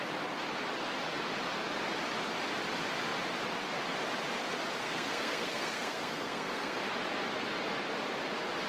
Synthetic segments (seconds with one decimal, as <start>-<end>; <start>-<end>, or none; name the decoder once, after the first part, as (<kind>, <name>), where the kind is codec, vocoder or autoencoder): 4.8-6.8 (codec, SNAC)